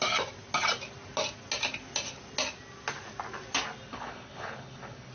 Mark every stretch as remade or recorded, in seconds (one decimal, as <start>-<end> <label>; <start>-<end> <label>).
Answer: 0.0-3.9 recorded; 3.9-5.1 remade